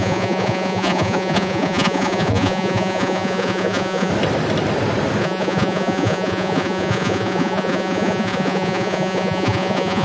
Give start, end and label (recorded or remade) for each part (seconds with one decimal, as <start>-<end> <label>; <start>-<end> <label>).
0.0-4.1 remade; 4.1-5.2 recorded; 5.2-10.0 remade